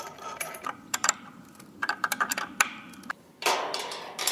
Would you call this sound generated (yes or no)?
yes